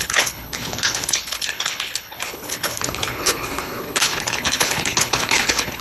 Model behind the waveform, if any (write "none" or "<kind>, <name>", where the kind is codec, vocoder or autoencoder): codec, HILCodec